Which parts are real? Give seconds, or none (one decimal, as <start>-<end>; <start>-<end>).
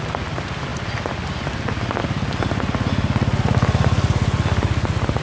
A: 0.0-5.2